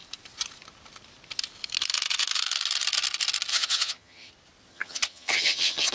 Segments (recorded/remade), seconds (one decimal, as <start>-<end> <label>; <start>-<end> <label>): 0.0-3.5 recorded; 3.5-4.3 remade; 4.3-4.7 recorded; 4.7-5.9 remade